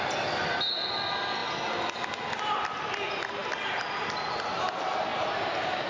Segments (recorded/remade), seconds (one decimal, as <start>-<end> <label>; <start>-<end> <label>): 0.0-5.1 recorded; 5.1-5.9 remade